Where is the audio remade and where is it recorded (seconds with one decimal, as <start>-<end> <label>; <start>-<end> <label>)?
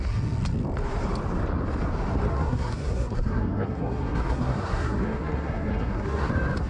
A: 0.0-2.3 recorded; 2.3-6.3 remade; 6.3-6.7 recorded